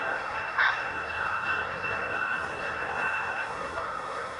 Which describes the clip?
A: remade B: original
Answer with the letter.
A